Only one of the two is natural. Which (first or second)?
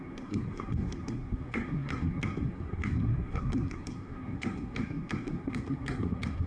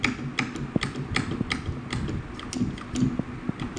second